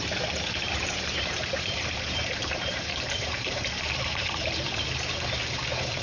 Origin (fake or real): fake